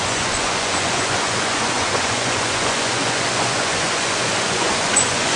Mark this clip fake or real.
fake